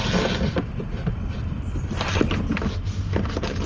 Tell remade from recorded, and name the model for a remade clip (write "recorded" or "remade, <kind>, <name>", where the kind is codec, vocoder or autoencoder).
recorded